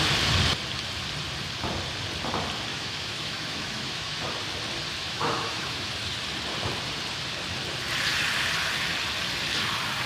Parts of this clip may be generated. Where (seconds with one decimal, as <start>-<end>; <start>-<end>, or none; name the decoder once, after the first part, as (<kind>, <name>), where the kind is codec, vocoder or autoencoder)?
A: 2.7-4.2 (autoencoder, DAC-VAE); 5.0-5.9